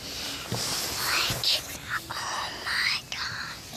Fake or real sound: real